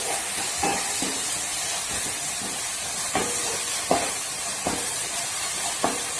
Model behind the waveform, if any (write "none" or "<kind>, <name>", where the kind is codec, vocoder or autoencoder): none